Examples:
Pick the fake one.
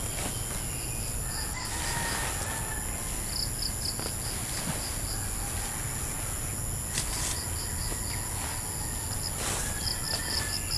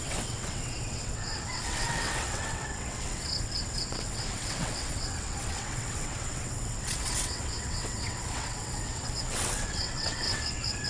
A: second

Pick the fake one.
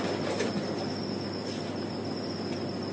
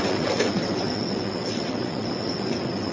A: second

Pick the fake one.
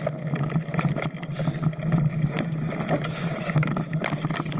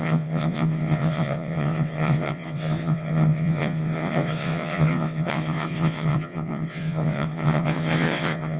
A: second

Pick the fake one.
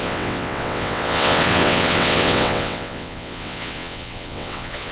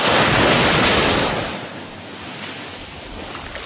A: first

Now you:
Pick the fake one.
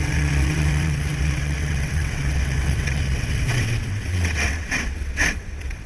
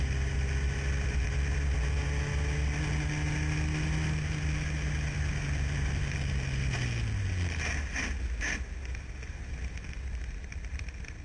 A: first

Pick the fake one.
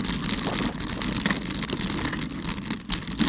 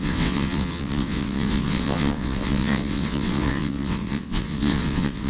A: second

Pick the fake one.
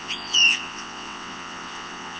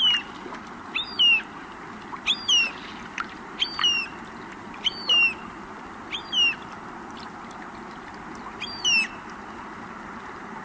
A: first